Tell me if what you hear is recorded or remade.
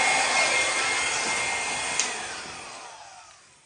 recorded